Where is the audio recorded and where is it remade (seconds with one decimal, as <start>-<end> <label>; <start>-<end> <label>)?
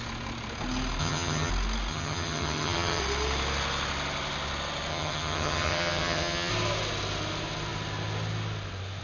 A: 0.0-1.0 recorded; 1.0-1.5 remade; 1.5-1.9 recorded; 1.9-3.0 remade; 3.0-4.9 recorded; 4.9-6.5 remade; 6.5-9.0 recorded